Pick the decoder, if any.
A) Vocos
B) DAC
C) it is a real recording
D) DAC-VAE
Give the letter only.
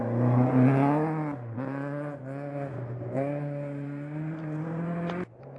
C